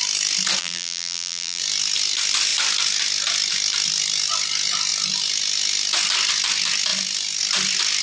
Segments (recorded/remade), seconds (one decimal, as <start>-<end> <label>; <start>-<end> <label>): 0.0-0.6 recorded; 0.6-1.6 remade; 1.6-8.0 recorded